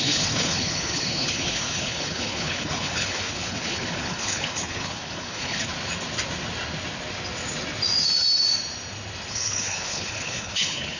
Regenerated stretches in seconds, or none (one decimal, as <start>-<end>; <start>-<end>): 0.0-5.7; 9.3-11.0